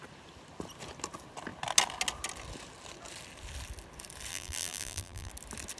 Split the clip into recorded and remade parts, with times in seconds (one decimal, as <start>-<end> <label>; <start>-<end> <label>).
0.0-4.3 recorded; 4.3-5.3 remade; 5.3-5.8 recorded